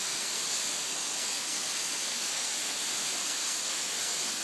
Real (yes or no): no